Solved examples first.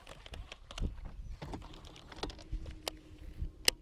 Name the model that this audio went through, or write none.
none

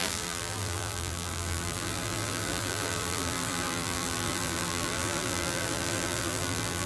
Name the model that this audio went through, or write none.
vocoder, BigVGAN v2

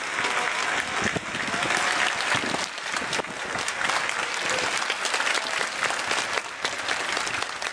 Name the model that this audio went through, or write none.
none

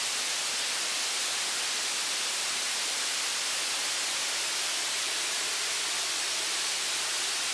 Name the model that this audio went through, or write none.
none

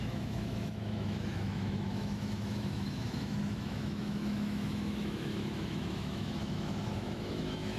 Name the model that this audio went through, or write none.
autoencoder, DAC-VAE